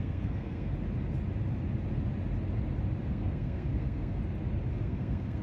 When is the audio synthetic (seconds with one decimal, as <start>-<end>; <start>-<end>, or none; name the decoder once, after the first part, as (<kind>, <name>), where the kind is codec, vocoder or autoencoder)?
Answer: 0.0-0.7 (codec, SNAC); 3.1-4.2; 4.7-5.4